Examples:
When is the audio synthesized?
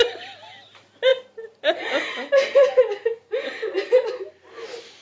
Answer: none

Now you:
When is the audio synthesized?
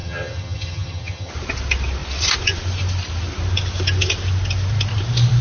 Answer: 0.0-1.3 (vocoder, HiFi-GAN)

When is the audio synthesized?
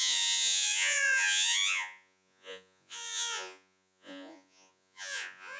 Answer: 0.0-5.6 (vocoder, Vocos)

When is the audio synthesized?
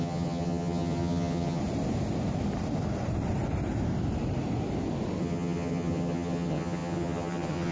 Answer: 0.0-1.6 (vocoder, HiFi-GAN); 5.2-7.7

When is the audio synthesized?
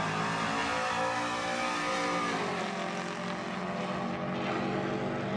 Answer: none